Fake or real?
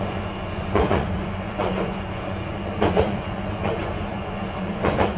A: fake